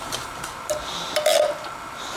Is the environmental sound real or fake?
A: fake